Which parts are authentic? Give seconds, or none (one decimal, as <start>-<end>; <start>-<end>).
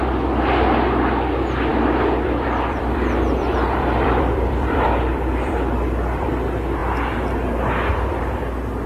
0.0-1.7; 6.3-8.9